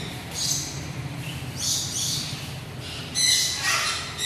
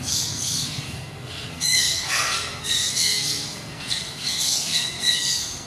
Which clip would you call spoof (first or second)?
second